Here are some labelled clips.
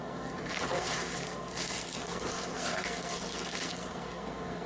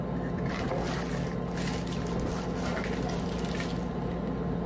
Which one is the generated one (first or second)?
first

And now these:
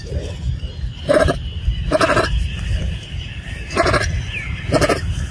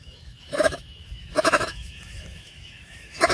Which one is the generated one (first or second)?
second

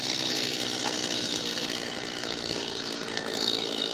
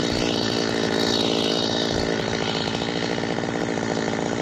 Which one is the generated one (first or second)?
first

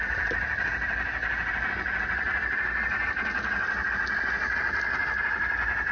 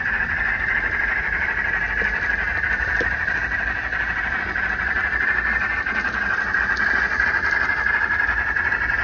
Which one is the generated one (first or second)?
second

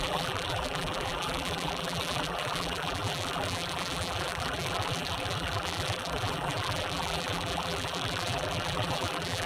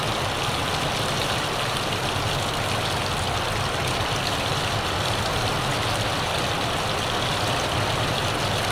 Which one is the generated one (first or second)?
first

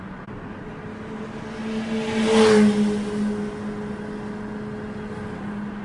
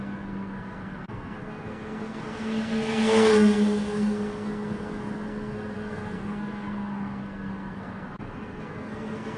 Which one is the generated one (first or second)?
second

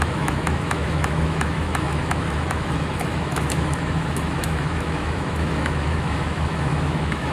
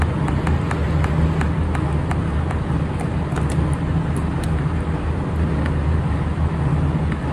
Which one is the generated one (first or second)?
first